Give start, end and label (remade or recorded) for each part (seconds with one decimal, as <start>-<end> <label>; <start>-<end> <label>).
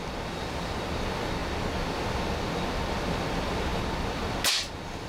0.0-5.1 recorded